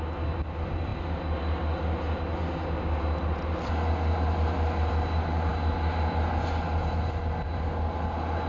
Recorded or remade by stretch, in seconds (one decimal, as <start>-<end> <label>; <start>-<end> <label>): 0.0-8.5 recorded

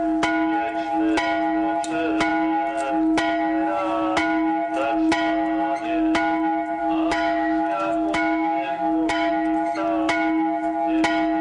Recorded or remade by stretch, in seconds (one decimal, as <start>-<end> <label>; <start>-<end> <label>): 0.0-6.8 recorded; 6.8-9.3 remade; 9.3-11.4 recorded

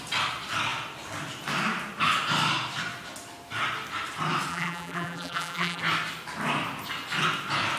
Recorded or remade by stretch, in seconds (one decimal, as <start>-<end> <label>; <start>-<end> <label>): 0.0-4.5 recorded; 4.5-5.8 remade; 5.8-7.8 recorded

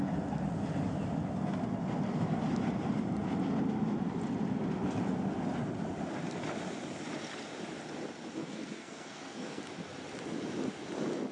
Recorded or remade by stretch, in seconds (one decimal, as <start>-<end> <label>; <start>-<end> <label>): 0.0-8.4 recorded; 8.4-9.6 remade; 9.6-11.3 recorded

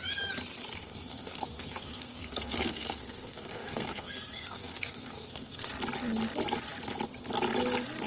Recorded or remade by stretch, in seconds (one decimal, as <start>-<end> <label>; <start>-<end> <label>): 0.0-0.8 recorded; 0.8-5.7 remade; 5.7-8.1 recorded

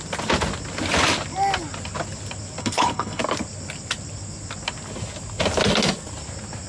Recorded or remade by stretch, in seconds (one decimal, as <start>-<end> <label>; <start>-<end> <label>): 0.0-2.6 recorded; 2.6-3.2 remade; 3.2-6.7 recorded